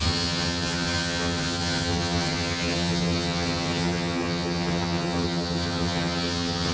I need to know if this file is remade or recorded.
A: remade